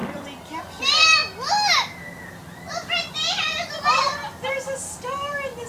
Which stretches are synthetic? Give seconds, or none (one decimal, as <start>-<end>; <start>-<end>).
0.6-1.2; 3.1-5.7